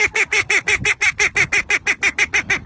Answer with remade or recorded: recorded